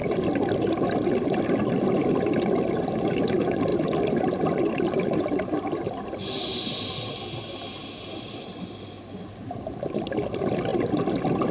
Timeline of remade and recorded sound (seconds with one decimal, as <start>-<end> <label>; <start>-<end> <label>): 0.0-11.5 recorded